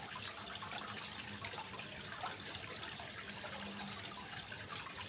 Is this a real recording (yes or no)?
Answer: yes